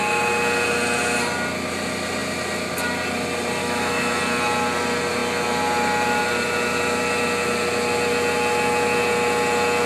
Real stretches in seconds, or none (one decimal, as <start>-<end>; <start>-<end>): 0.0-3.6; 4.2-9.9